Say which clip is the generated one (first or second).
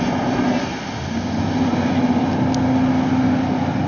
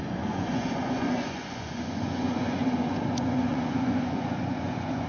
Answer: second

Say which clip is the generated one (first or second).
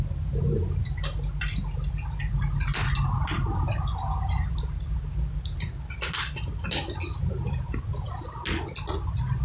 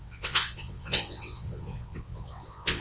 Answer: second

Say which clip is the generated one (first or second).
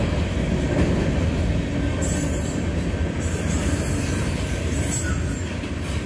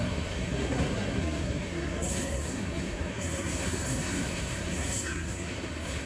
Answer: second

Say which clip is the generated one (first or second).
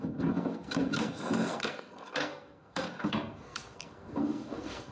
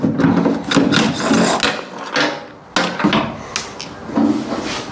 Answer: first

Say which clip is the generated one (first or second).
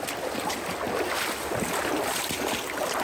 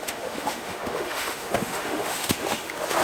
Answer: second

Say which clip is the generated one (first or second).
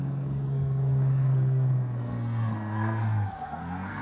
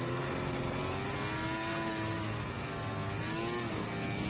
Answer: first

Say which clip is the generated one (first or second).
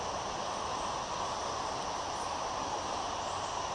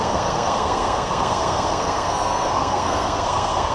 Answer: second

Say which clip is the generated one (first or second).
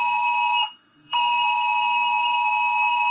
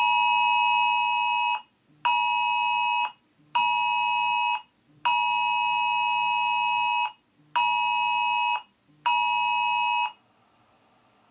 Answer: first